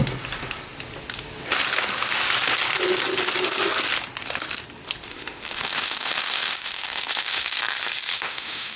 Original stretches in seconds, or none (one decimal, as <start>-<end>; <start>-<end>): 0.0-5.1; 7.6-8.1